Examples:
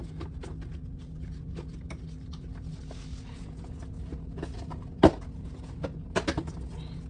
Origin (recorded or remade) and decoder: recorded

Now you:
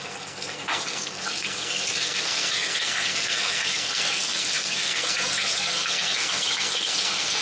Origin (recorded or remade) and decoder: remade, codec, SNAC